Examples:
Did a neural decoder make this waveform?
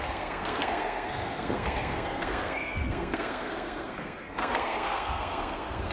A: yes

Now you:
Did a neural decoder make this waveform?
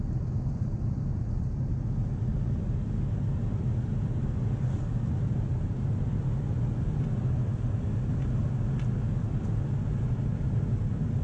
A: no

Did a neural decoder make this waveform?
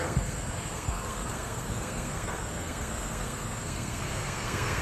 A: yes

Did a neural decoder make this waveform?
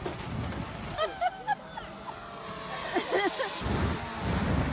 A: no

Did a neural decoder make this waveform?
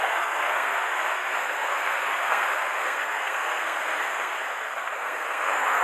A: yes